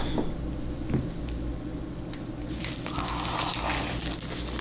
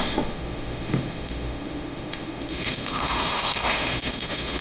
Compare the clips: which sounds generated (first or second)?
second